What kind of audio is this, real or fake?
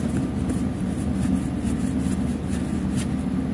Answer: real